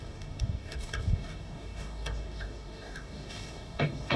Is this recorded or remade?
remade